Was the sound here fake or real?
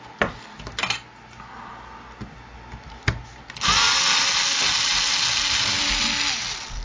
real